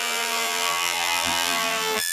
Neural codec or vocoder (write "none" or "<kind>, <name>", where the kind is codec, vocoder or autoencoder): vocoder, BigVGAN v2